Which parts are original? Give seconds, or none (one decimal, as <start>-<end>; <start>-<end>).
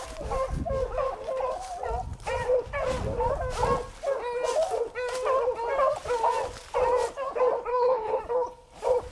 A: 0.0-7.7; 8.2-9.1